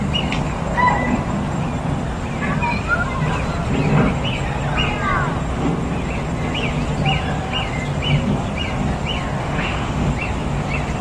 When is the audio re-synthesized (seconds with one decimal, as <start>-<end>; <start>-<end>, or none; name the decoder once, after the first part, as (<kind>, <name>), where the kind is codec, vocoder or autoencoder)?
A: 9.4-10.1 (autoencoder, DAC-VAE)